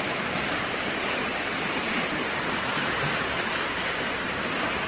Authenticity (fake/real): fake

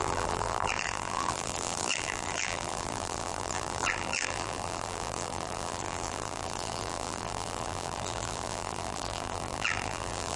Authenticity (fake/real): fake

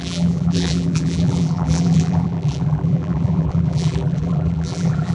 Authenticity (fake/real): fake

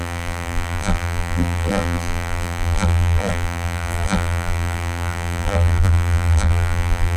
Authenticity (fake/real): fake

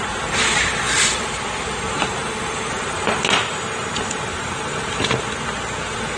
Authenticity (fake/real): fake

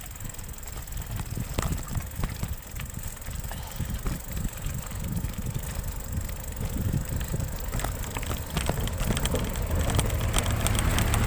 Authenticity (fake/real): real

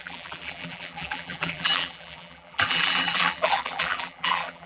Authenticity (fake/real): fake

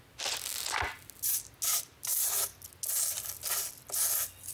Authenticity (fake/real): real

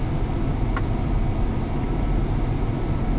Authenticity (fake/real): real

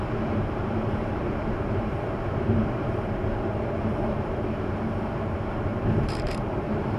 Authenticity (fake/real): fake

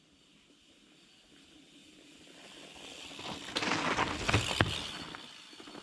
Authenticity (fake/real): real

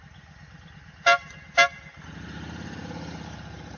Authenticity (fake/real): fake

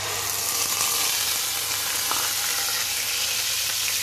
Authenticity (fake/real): real